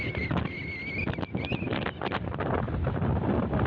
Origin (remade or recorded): recorded